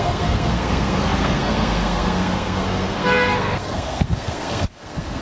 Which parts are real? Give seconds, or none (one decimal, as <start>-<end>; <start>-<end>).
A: none

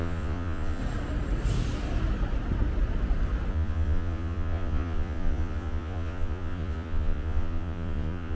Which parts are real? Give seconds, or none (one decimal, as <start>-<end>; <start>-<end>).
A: 0.8-3.5